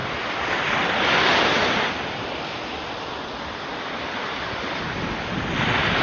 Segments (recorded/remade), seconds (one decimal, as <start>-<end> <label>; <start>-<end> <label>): 0.0-6.0 recorded